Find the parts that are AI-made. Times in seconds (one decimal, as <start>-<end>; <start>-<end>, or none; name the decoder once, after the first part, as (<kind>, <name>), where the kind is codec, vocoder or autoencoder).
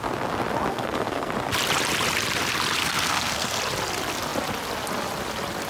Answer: 0.7-1.3 (codec, SNAC); 2.8-3.6